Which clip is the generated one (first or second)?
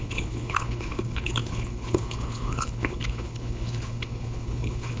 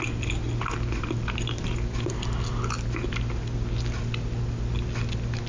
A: first